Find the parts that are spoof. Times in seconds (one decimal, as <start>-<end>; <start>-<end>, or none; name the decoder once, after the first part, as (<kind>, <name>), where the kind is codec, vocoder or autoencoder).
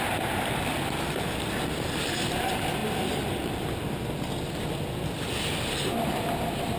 none